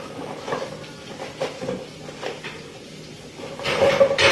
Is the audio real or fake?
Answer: real